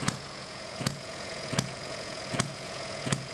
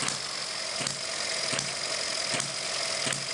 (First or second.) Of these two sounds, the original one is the second